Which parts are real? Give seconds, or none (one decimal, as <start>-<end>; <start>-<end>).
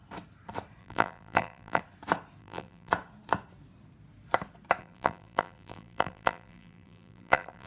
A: 0.0-0.8; 1.8-2.4; 2.9-4.8